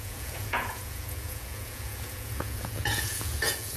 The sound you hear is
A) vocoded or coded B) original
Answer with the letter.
A